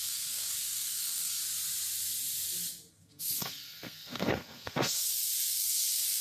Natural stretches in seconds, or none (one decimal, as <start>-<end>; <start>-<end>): 1.4-2.9